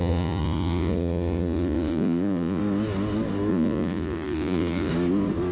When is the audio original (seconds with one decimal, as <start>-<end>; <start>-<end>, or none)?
2.6-3.5; 4.9-5.5